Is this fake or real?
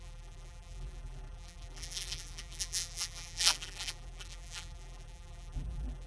fake